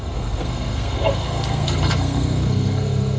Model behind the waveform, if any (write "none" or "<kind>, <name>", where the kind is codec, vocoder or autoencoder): codec, SNAC